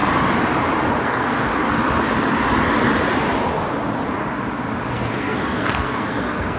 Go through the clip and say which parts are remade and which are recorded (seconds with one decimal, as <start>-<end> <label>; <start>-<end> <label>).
0.0-1.0 recorded; 1.0-1.5 remade; 1.5-4.9 recorded; 4.9-6.6 remade